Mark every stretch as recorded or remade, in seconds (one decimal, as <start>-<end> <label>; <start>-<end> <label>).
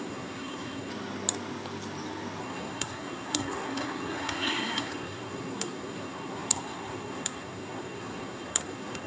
0.0-0.9 remade; 0.9-2.4 recorded; 2.4-9.1 remade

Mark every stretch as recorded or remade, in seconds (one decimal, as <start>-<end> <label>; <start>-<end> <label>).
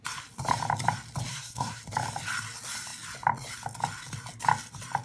0.0-1.3 recorded; 1.3-1.8 remade; 1.8-5.0 recorded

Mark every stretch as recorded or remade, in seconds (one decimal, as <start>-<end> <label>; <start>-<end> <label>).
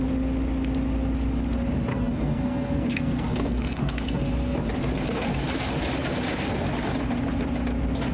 0.0-1.9 recorded; 1.9-4.2 remade; 4.2-8.1 recorded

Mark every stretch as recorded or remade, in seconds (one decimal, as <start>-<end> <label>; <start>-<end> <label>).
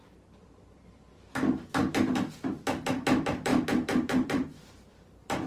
0.0-5.5 recorded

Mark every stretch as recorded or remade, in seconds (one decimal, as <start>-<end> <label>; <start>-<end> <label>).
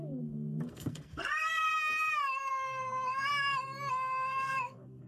0.0-1.7 remade; 1.7-2.5 recorded; 2.5-3.3 remade; 3.3-3.9 recorded; 3.9-5.1 remade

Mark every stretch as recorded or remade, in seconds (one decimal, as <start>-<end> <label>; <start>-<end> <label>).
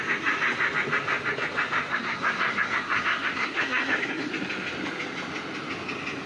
0.0-1.9 recorded; 1.9-4.3 remade; 4.3-6.3 recorded